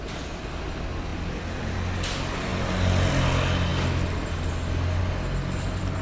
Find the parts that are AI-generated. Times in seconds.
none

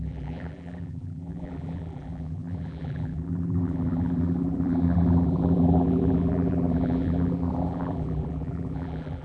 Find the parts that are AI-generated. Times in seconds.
0.0-9.2 (vocoder, BigVGAN v2)

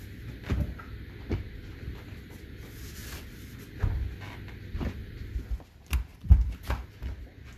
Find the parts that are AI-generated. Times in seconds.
none

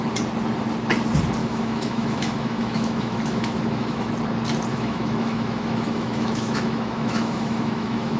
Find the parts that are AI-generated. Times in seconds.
1.4-4.1 (autoencoder, DAC-VAE); 4.7-8.2

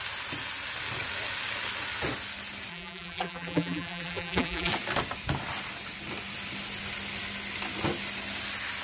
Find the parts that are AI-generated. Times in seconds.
2.7-4.7 (vocoder, BigVGAN v2)

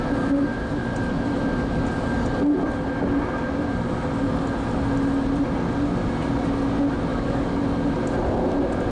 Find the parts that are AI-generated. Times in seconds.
7.1-7.6 (codec, DAC)